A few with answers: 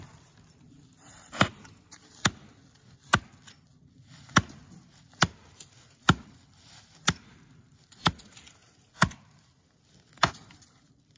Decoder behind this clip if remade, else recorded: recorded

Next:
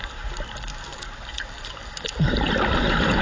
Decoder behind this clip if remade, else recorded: recorded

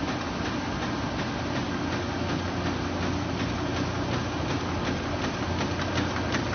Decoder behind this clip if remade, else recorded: recorded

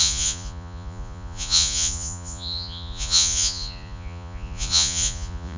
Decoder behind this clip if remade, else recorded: remade, vocoder, Vocos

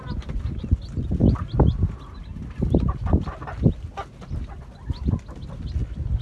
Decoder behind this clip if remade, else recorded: recorded